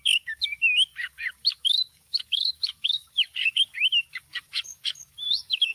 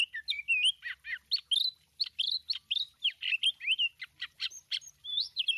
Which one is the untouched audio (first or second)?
second